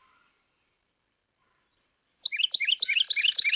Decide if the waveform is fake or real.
fake